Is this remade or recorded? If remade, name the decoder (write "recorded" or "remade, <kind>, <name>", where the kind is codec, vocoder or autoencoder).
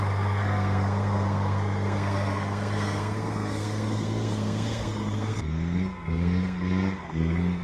remade, codec, SNAC